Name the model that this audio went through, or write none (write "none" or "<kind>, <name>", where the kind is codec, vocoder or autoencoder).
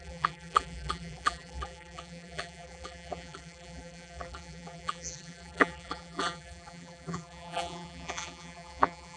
vocoder, BigVGAN v2